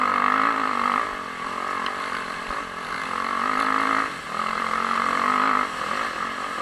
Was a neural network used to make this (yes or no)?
no